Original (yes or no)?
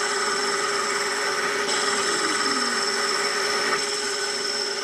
no